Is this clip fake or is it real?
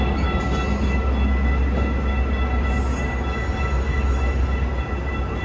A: real